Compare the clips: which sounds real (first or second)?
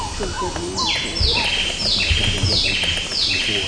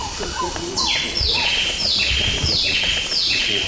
first